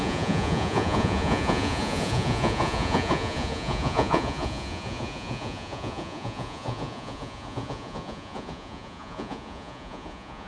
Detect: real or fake fake